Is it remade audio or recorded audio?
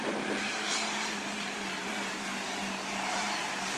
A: remade